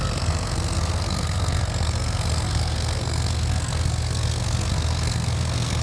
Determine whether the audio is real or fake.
fake